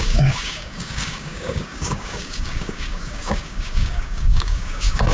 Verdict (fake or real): fake